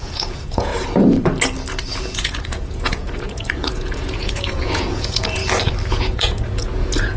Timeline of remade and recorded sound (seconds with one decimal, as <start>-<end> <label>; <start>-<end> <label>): 0.0-0.7 remade; 0.7-2.0 recorded; 2.0-5.4 remade; 5.4-5.9 recorded; 5.9-7.2 remade